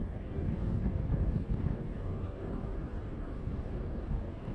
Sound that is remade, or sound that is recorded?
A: remade